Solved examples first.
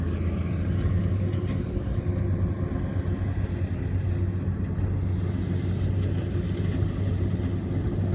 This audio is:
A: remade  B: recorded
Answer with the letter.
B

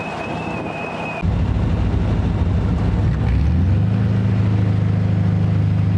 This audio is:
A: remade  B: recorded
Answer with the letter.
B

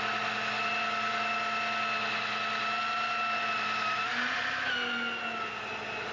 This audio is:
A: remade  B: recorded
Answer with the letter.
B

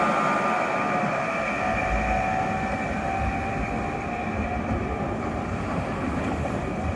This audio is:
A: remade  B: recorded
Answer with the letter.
B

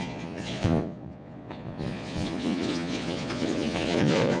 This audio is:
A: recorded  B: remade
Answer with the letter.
B